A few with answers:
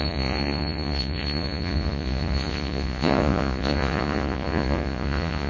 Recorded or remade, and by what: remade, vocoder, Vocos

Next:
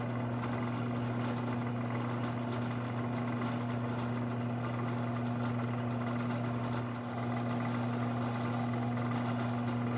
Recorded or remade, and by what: recorded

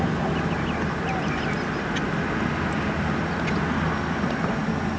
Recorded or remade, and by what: recorded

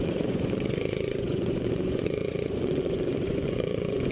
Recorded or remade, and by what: remade, vocoder, Vocos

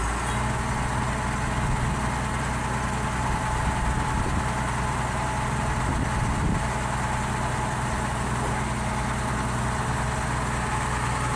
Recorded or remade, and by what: recorded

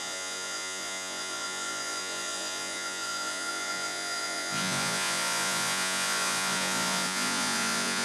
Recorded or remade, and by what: remade, vocoder, Vocos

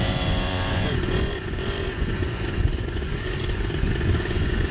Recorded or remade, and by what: remade, vocoder, Vocos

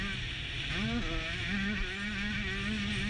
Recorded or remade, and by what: recorded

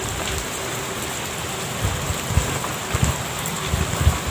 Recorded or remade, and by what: recorded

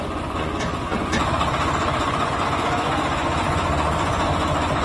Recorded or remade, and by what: remade, vocoder, Vocos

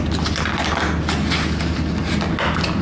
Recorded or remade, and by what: recorded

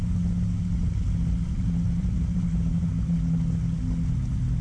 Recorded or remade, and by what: recorded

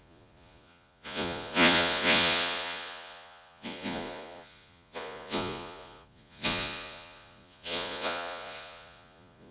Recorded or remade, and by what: remade, vocoder, Vocos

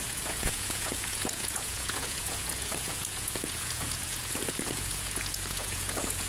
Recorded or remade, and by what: remade, vocoder, Vocos